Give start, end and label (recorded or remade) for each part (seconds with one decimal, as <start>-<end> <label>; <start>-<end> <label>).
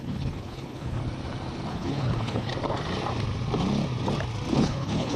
0.0-1.0 remade; 1.0-1.7 recorded; 1.7-2.5 remade; 2.5-4.5 recorded; 4.5-5.2 remade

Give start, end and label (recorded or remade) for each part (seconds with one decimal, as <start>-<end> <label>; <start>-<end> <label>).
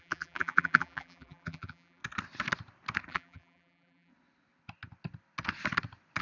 0.0-2.0 remade; 2.0-3.1 recorded; 3.1-4.1 remade; 4.1-6.2 recorded